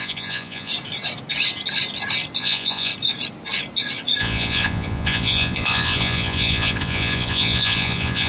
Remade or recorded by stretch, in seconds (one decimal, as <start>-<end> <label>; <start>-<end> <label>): 0.0-0.7 remade; 0.7-2.4 recorded; 2.4-2.9 remade; 2.9-4.2 recorded; 4.2-8.3 remade